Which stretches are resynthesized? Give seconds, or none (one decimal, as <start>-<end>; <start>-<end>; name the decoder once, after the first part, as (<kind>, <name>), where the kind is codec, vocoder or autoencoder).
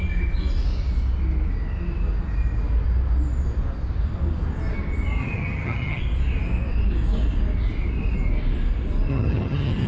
5.2-6.0 (vocoder, HiFi-GAN); 9.1-9.9